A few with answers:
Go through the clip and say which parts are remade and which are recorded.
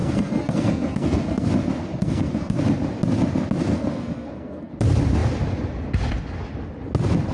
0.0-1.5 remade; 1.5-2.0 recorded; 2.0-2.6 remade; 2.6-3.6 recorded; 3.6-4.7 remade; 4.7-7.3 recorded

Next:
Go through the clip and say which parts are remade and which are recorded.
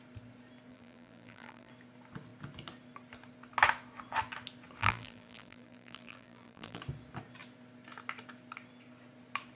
0.0-0.7 recorded; 0.7-1.7 remade; 1.7-4.8 recorded; 4.8-6.8 remade; 6.8-9.6 recorded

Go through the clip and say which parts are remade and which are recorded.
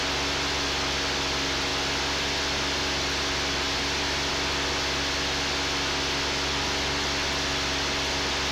0.0-8.5 recorded